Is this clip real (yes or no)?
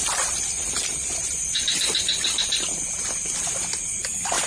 yes